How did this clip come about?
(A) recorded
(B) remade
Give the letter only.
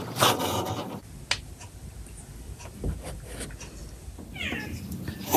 A